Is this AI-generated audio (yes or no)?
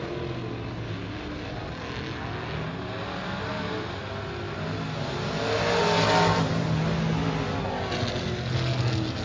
no